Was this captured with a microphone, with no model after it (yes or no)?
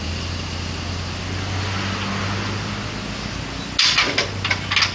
yes